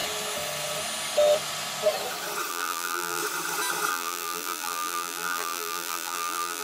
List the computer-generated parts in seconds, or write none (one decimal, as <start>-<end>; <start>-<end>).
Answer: 2.5-3.2; 3.9-6.6